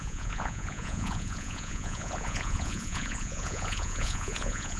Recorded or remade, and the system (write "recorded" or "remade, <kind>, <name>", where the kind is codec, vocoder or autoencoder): remade, vocoder, Vocos